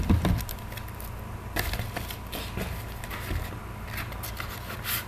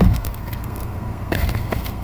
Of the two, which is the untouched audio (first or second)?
first